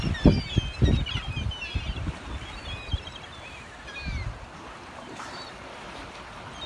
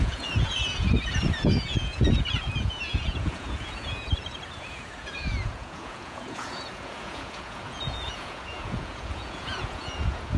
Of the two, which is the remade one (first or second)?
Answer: second